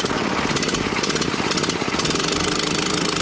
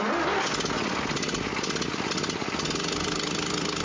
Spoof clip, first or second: first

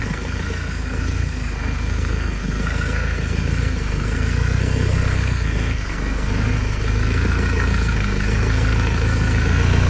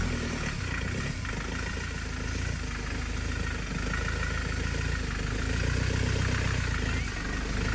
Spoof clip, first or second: first